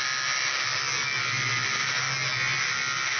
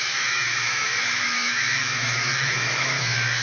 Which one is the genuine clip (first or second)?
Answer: first